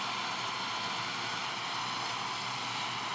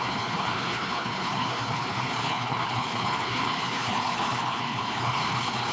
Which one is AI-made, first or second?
second